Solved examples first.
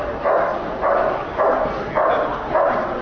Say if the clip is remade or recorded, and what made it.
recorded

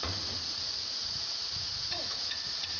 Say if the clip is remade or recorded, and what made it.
remade, vocoder, Vocos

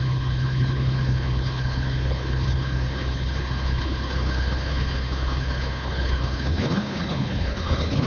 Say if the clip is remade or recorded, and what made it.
remade, codec, HILCodec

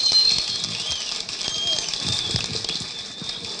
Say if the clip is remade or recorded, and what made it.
recorded